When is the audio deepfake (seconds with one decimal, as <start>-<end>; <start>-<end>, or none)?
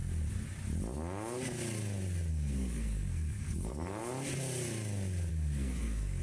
2.3-4.0; 5.3-6.2